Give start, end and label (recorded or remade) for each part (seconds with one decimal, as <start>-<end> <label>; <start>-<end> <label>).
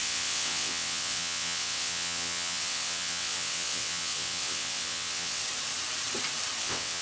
0.0-5.4 remade; 5.4-6.6 recorded; 6.6-7.0 remade